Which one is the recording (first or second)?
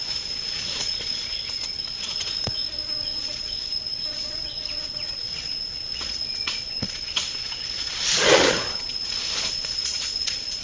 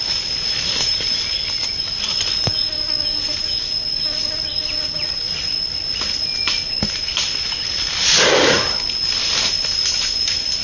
second